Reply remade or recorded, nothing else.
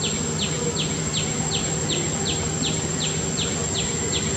recorded